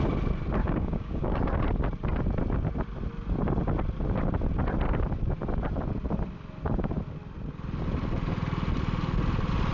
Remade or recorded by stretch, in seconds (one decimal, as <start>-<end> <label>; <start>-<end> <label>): 0.0-0.6 recorded; 0.6-1.6 remade; 1.6-9.7 recorded